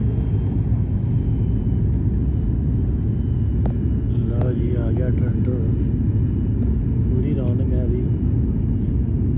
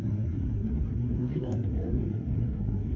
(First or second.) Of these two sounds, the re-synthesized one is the second